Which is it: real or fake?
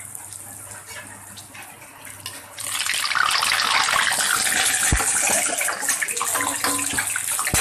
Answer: real